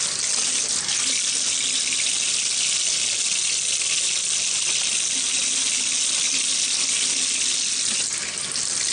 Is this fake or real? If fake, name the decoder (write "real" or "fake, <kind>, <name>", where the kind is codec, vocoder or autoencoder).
real